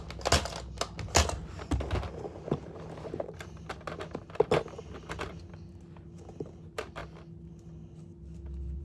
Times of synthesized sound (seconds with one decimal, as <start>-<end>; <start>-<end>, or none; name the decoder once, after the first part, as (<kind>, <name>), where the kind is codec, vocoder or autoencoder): none